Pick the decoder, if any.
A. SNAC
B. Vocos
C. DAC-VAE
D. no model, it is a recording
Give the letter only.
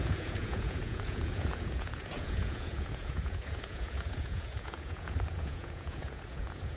B